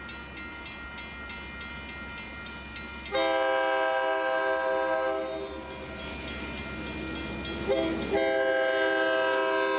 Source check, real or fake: real